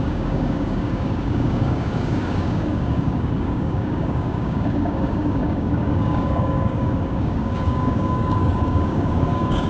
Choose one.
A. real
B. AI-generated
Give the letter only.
B